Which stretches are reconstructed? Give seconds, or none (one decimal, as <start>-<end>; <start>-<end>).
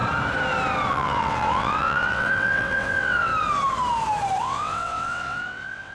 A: 0.9-3.3; 4.4-5.9